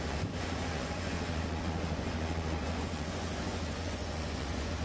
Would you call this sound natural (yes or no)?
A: no